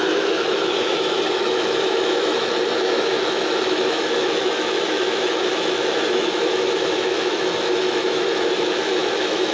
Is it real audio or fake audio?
fake